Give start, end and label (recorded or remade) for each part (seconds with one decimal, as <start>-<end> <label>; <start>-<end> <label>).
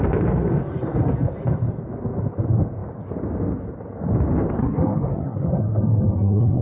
0.0-4.6 recorded; 4.6-6.6 remade